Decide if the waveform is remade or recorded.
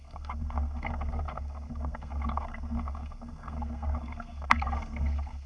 remade